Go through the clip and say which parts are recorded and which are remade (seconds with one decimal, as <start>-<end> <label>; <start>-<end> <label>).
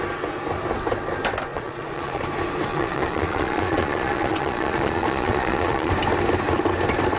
0.0-1.5 recorded; 1.5-2.2 remade; 2.2-2.7 recorded; 2.7-5.9 remade; 5.9-7.2 recorded